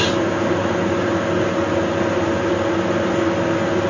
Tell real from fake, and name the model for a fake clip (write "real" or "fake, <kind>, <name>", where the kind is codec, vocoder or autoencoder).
real